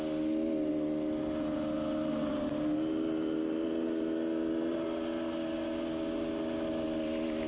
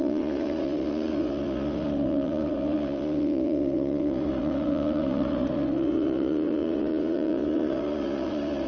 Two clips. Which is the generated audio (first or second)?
second